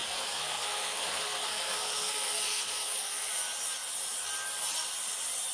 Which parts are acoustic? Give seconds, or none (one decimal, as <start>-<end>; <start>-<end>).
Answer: 3.3-5.5